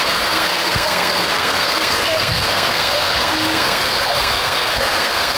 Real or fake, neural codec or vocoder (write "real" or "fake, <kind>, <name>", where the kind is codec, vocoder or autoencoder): fake, codec, SNAC